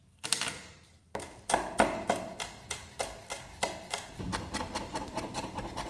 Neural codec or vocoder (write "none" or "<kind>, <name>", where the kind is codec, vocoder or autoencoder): none